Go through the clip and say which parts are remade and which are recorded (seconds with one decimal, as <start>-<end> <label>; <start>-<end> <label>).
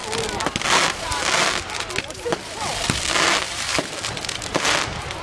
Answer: 0.0-3.5 recorded; 3.5-4.7 remade; 4.7-5.2 recorded